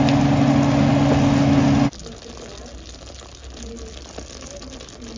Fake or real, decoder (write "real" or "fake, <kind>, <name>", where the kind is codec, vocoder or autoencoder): real